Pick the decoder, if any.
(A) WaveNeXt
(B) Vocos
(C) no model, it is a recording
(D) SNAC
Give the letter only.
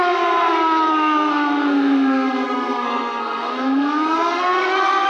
D